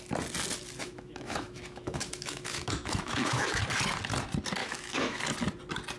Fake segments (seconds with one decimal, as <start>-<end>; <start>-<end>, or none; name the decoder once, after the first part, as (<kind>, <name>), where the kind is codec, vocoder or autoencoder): 0.8-3.6 (autoencoder, DAC-VAE); 4.6-5.2